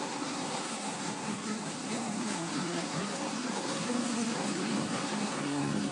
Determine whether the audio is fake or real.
fake